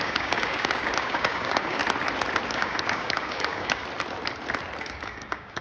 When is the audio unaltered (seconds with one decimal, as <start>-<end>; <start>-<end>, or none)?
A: 1.8-2.5; 3.8-4.8